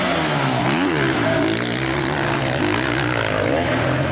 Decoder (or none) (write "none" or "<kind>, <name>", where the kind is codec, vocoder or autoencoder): none